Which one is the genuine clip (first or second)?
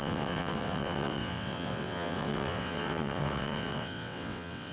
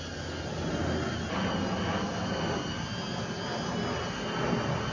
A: second